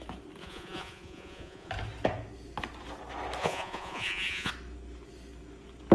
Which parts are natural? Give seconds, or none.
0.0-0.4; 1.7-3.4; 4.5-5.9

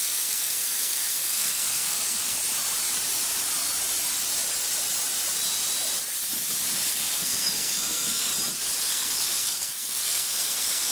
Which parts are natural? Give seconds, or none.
2.4-6.9; 8.3-8.9

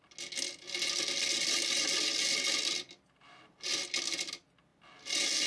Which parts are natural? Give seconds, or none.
0.0-5.5

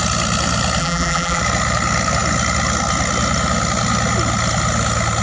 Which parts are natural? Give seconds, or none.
0.0-0.8; 1.4-5.2

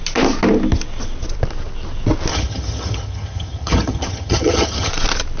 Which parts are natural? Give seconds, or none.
0.0-2.3; 4.9-5.4

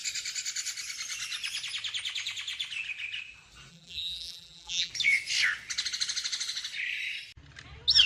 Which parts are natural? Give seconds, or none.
0.0-3.7; 4.9-8.1

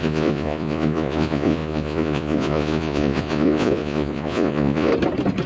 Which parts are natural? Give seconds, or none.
4.9-5.5

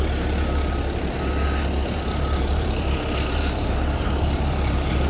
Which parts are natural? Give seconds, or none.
0.0-1.8